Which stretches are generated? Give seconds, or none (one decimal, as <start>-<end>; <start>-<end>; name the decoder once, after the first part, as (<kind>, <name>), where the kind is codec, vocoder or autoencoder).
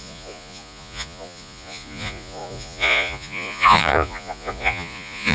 0.0-5.3 (vocoder, Vocos)